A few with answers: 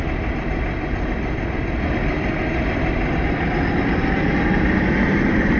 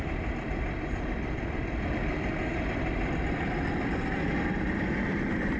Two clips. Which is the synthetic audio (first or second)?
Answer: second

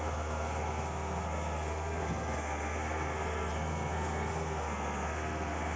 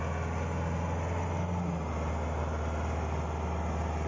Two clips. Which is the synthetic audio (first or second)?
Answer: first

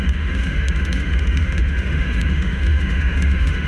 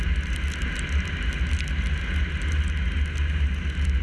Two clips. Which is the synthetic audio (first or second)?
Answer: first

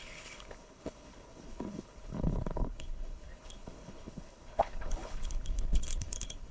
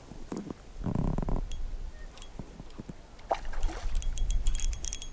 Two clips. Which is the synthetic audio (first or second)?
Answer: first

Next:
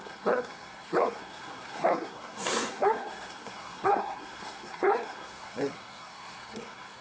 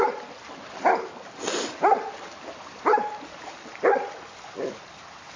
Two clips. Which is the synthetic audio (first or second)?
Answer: first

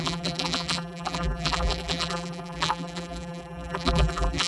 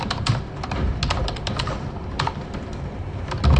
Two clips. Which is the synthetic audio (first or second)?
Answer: first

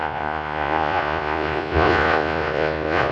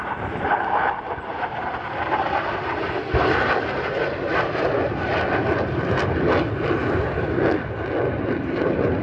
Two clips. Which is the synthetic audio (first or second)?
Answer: first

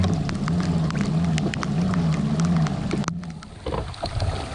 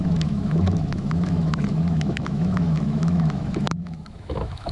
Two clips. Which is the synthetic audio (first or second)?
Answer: second